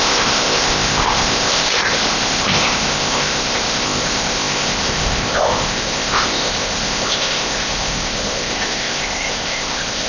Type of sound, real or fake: fake